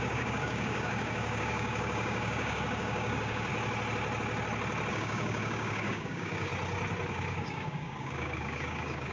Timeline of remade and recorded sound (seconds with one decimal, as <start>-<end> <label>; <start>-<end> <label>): 0.0-3.5 remade; 3.5-4.9 recorded; 4.9-6.5 remade; 6.5-7.1 recorded; 7.1-9.1 remade